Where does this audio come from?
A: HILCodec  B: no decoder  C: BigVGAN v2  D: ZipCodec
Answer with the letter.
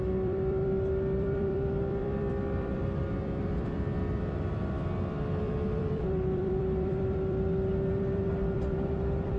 C